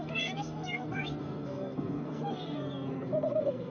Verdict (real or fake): fake